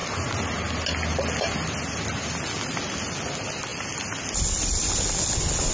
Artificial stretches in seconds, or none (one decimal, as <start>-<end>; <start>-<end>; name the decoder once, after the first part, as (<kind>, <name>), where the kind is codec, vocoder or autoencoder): none